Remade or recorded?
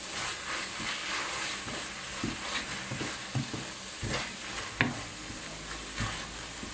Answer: recorded